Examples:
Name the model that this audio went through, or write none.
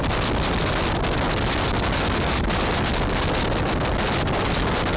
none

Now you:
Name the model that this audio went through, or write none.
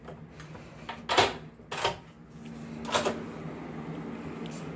none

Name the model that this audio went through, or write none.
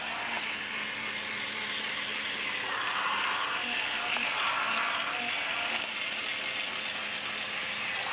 none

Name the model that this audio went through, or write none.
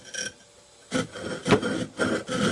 none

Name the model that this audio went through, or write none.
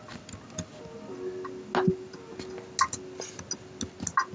none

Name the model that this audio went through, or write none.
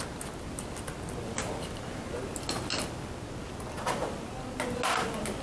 none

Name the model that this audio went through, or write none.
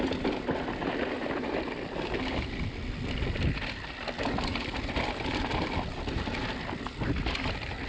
none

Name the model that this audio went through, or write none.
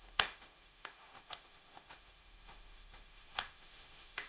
autoencoder, DAC-VAE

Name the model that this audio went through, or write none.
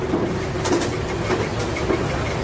none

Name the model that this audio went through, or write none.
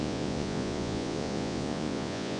vocoder, Vocos